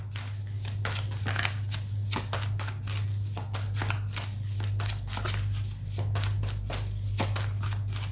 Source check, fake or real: real